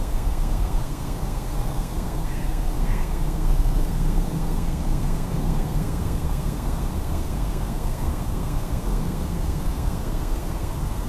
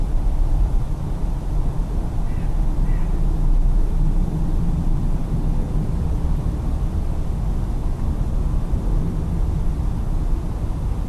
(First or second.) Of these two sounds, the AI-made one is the first